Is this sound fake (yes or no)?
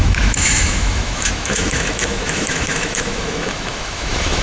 yes